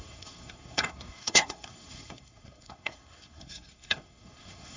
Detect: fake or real fake